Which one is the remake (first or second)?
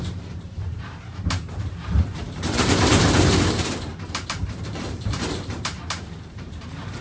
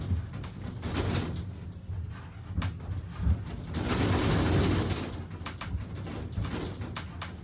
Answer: first